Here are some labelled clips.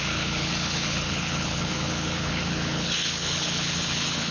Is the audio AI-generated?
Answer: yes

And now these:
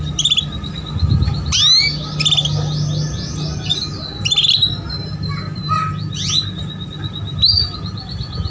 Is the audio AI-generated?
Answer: no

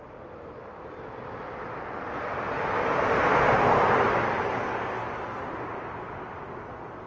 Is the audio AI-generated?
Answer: no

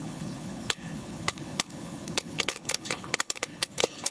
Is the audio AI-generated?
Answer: yes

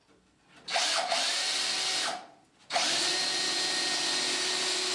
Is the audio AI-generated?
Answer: no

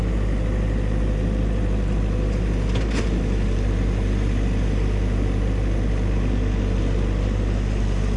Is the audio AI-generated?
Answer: no